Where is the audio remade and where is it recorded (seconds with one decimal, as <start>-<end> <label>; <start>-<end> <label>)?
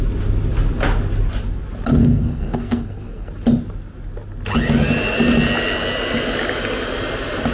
0.0-2.0 recorded; 2.0-3.3 remade; 3.3-7.5 recorded